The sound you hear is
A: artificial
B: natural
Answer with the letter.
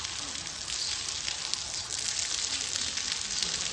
B